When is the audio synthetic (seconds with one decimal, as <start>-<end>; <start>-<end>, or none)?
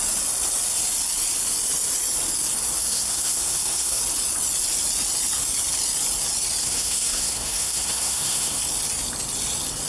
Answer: 2.8-4.0; 6.6-8.6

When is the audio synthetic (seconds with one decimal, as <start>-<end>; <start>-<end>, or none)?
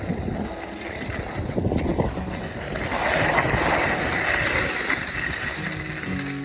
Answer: none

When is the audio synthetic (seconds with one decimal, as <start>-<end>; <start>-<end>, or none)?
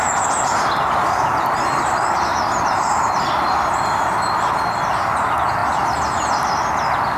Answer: 1.3-4.5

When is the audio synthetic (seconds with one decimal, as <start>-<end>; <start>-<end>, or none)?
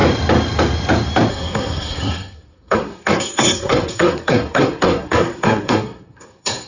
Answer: 1.3-6.7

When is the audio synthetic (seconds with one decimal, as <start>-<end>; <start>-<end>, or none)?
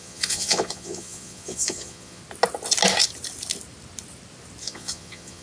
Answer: 0.0-2.2; 4.6-5.4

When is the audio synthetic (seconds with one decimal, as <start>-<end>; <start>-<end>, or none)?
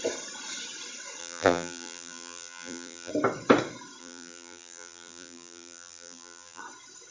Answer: 1.2-3.1; 4.0-6.6